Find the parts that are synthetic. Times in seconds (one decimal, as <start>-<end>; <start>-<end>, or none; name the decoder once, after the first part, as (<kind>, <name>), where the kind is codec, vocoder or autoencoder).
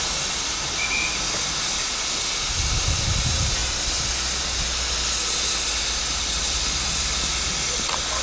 none